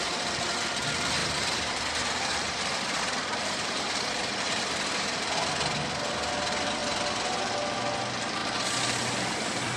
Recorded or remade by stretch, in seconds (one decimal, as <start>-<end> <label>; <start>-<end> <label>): 0.0-1.2 recorded; 1.2-4.6 remade; 4.6-9.8 recorded